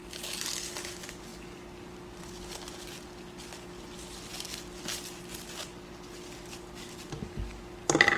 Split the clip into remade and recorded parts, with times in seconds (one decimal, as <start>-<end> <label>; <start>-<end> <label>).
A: 0.0-8.2 recorded